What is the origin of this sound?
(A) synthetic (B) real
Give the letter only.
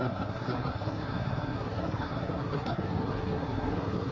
A